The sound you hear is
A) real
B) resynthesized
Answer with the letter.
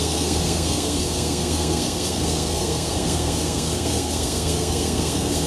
B